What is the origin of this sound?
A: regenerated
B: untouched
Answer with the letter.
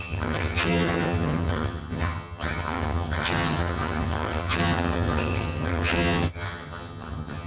A